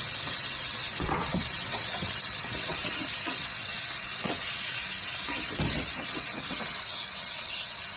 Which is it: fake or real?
fake